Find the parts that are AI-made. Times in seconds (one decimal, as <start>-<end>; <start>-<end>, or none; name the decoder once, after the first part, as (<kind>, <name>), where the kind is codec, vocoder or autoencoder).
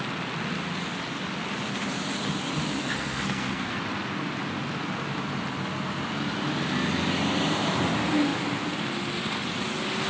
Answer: 2.8-3.8 (codec, SNAC)